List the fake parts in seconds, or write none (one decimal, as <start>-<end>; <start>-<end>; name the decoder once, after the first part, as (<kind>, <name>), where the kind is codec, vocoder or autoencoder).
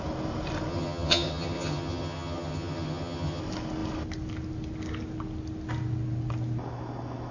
0.7-3.4 (vocoder, HiFi-GAN)